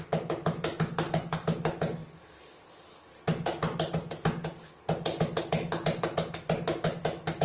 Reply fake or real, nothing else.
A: real